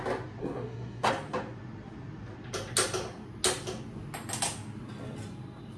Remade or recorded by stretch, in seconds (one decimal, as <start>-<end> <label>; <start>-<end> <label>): 0.0-0.4 recorded; 0.4-1.1 remade; 1.1-5.8 recorded